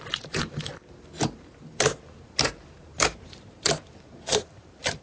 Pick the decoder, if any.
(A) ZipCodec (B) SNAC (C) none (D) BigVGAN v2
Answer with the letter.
D